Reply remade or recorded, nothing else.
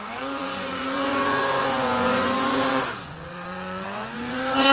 remade